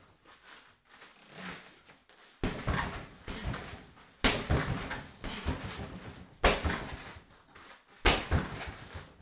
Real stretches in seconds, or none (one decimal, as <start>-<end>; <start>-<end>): 0.0-9.2